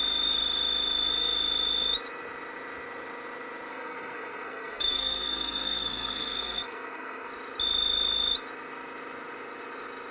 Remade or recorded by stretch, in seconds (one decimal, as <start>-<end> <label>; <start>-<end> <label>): 0.0-3.7 recorded; 3.7-7.3 remade; 7.3-10.1 recorded